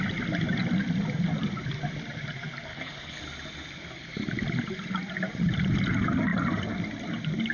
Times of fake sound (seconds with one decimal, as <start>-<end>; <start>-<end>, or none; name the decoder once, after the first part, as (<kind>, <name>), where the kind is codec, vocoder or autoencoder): 2.7-3.2 (codec, HILCodec)